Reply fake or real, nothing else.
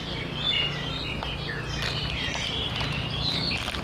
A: real